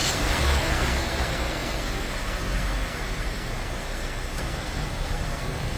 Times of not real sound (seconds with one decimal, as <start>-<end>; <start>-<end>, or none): 0.0-5.8